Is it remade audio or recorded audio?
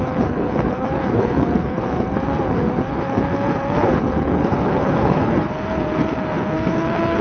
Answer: remade